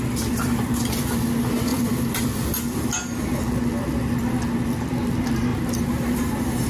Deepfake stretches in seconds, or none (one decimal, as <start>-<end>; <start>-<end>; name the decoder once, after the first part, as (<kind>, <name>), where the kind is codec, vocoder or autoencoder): 1.7-3.4 (vocoder, BigVGAN v2); 5.5-6.3